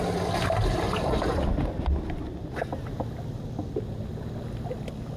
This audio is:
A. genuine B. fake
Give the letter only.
A